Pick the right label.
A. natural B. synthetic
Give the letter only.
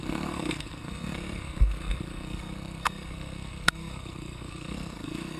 B